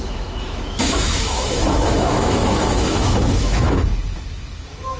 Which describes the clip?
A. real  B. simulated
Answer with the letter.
B